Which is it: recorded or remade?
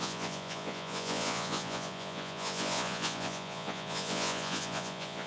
remade